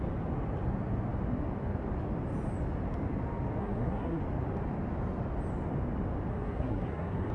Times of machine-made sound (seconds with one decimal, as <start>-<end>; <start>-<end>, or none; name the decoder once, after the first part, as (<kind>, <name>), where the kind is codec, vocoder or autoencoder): 3.6-4.2 (codec, SNAC); 6.3-7.3